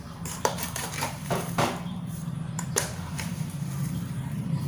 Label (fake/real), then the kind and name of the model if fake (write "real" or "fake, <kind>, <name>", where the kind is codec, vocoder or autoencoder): fake, vocoder, BigVGAN v2